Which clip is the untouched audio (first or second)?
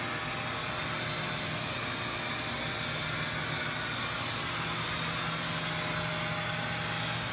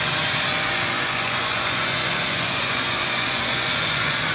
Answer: first